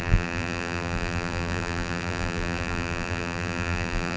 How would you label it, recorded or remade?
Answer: remade